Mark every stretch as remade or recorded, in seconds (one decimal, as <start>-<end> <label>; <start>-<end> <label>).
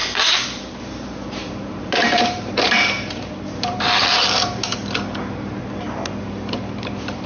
0.0-0.8 recorded; 0.8-4.8 remade; 4.8-6.2 recorded; 6.2-7.3 remade